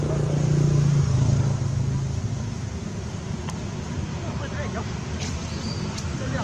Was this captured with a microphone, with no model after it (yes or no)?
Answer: yes